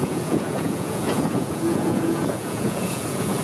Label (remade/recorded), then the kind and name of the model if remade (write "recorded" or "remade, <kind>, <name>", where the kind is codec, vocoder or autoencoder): remade, vocoder, Vocos